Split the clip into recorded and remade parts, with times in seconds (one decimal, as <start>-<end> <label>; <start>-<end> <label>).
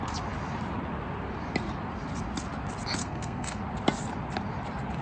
0.0-3.0 recorded; 3.0-3.6 remade; 3.6-5.0 recorded